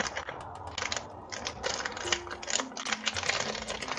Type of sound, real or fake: real